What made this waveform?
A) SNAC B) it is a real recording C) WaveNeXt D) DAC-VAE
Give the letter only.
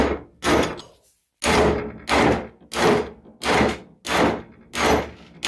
B